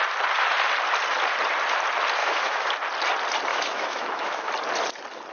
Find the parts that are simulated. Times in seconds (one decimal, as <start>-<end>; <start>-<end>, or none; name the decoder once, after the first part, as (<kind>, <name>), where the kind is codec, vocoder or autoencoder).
2.2-2.7 (autoencoder, DAC-VAE); 3.5-4.5